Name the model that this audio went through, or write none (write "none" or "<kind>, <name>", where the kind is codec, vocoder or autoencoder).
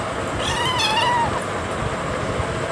none